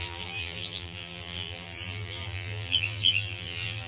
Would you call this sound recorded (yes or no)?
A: no